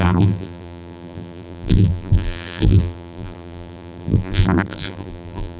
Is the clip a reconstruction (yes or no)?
yes